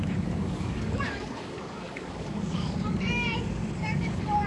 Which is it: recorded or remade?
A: remade